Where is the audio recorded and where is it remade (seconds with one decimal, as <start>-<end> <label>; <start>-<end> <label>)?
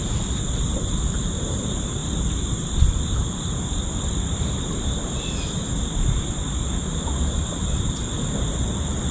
0.0-9.1 recorded